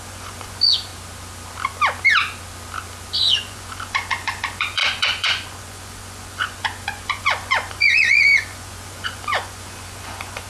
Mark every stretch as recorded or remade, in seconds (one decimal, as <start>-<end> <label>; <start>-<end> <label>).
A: 0.0-0.9 remade; 0.9-3.2 recorded; 3.2-10.5 remade